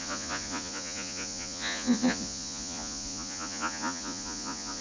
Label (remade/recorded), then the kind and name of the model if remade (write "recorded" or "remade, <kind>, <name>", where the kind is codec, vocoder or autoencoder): remade, vocoder, Vocos